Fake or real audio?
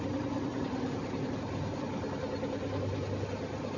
real